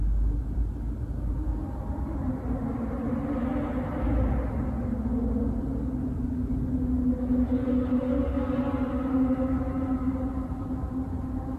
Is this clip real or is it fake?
real